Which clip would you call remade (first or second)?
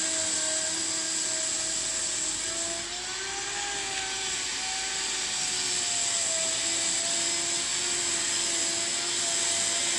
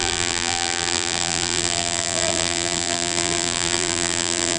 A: second